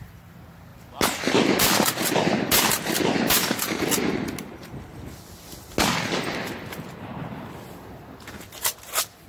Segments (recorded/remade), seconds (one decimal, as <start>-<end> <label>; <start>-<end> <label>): 0.0-9.3 recorded